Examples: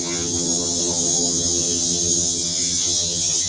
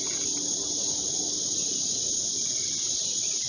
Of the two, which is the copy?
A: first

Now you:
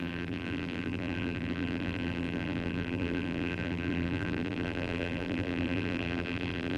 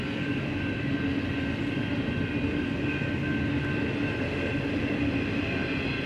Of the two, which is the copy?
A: first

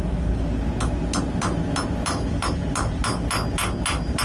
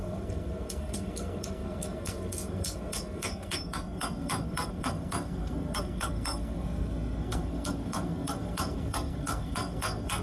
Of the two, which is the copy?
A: second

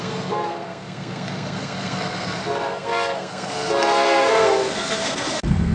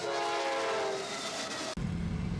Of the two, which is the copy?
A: first